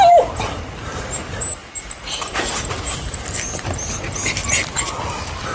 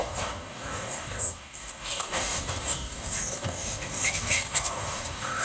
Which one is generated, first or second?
second